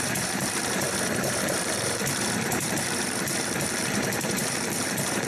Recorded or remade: remade